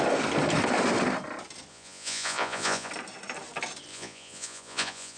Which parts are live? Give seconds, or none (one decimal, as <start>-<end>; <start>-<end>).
0.0-1.7; 2.9-3.9